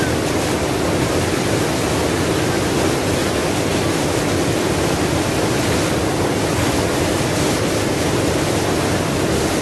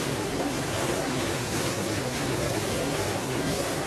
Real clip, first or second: first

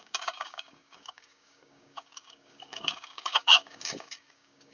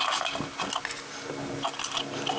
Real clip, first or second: second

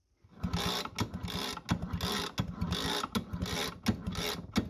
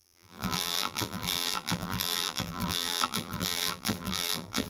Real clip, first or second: first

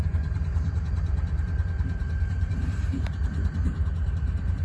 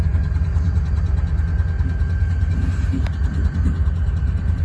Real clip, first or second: second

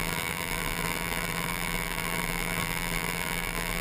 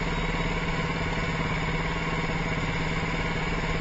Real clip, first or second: second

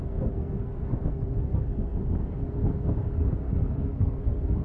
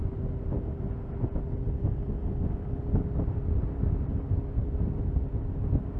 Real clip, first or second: second